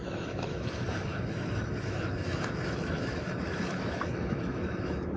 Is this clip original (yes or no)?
no